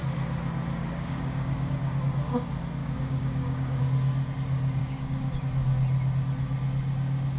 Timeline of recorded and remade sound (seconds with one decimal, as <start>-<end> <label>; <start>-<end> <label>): 0.0-0.8 recorded; 0.8-2.0 remade; 2.0-2.8 recorded; 2.8-3.8 remade; 3.8-4.8 recorded; 4.8-5.3 remade; 5.3-7.4 recorded